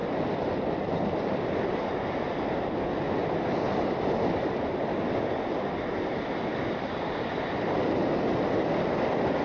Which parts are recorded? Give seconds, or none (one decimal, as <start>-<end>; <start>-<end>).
0.0-9.4